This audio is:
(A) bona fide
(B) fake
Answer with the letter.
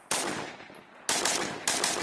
A